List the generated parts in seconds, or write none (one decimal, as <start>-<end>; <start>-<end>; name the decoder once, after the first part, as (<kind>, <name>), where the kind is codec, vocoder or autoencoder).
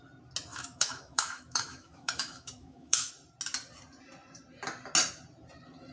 0.5-3.1 (autoencoder, DAC-VAE)